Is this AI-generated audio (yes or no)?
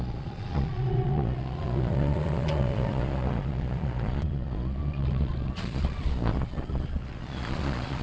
yes